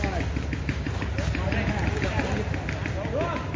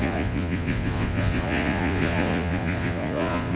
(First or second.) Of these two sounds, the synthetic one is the second